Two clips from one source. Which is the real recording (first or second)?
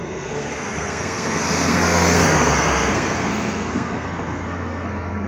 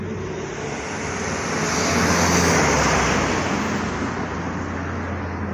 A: second